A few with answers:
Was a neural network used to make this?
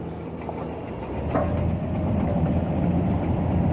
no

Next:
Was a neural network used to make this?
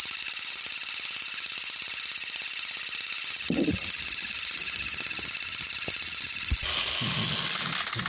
no